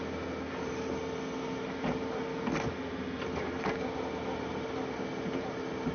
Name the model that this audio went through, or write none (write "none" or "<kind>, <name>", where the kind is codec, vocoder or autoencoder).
none